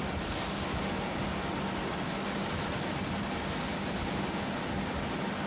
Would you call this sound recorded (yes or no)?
yes